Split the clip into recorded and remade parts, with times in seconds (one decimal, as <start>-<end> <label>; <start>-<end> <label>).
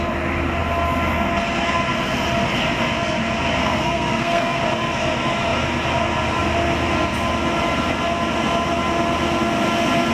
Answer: 0.0-3.6 recorded; 3.6-4.6 remade; 4.6-10.1 recorded